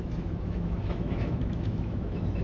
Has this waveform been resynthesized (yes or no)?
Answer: yes